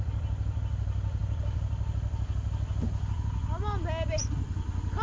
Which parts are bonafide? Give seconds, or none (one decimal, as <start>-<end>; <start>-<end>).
0.0-5.0